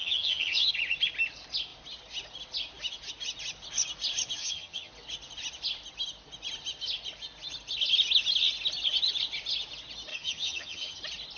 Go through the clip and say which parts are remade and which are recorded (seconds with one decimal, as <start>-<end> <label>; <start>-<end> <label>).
0.0-0.7 remade; 0.7-4.4 recorded; 4.4-4.9 remade; 4.9-10.1 recorded; 10.1-11.0 remade; 11.0-11.4 recorded